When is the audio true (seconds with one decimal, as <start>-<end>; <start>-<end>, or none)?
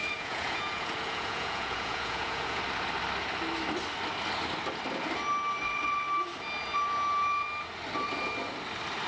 2.6-9.1